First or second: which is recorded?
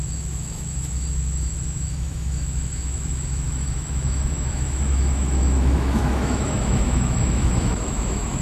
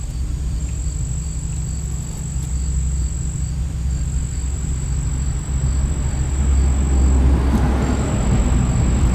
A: second